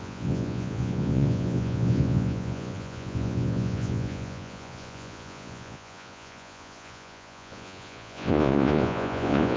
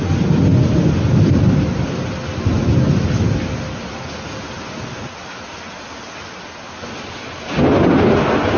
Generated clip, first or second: first